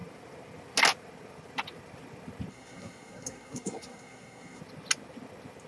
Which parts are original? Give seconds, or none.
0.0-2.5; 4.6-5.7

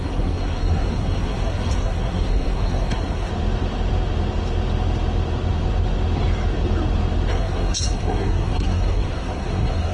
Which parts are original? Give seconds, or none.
3.3-7.3

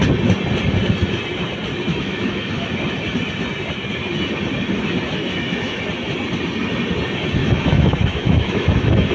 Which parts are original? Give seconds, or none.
0.0-1.9; 2.6-5.2; 5.8-7.4

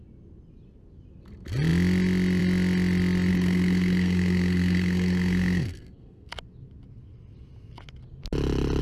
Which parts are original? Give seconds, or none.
0.0-3.3; 6.3-8.8